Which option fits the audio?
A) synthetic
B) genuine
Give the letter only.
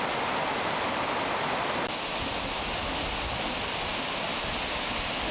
B